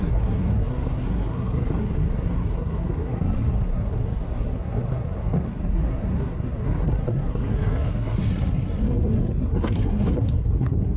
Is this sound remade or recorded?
remade